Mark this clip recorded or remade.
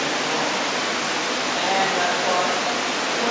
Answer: recorded